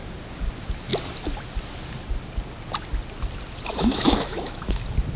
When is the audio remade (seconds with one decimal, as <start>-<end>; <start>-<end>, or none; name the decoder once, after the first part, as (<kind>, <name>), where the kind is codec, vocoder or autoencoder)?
3.7-4.8 (autoencoder, DAC-VAE)